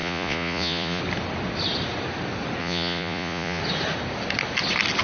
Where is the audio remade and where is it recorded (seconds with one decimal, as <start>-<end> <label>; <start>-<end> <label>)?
0.0-1.0 remade; 1.0-2.6 recorded; 2.6-3.6 remade; 3.6-5.0 recorded